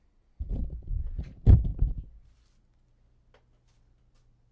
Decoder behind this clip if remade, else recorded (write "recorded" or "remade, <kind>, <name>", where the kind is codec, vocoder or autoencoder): recorded